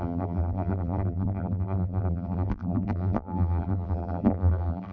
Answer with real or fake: fake